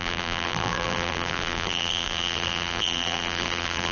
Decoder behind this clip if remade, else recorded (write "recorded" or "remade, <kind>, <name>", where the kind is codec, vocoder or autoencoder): remade, vocoder, BigVGAN v2